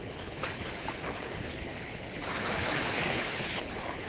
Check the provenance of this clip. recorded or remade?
remade